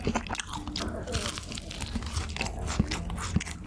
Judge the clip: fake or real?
real